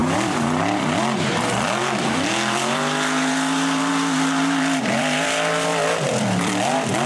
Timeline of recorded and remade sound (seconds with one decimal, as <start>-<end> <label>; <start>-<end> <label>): 0.0-7.1 remade